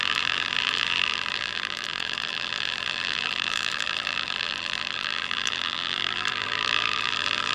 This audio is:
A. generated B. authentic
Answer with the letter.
A